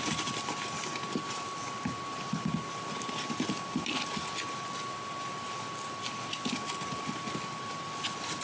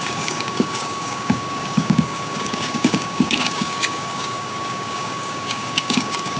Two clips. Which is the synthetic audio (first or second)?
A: second